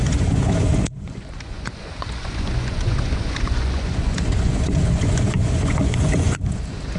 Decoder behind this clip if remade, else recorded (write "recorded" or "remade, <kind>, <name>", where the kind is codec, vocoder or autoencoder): remade, vocoder, Vocos